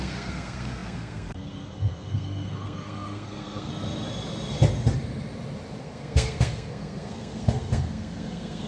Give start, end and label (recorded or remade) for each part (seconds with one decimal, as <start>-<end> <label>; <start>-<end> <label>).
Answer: 0.0-3.7 remade; 3.7-5.8 recorded; 5.8-8.7 remade